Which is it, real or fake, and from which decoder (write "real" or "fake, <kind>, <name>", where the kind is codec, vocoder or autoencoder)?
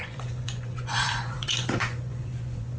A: fake, vocoder, Vocos